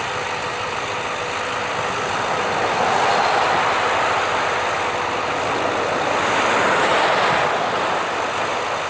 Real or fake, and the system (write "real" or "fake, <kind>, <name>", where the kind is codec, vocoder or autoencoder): real